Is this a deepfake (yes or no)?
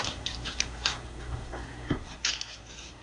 yes